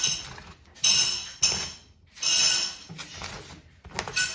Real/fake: real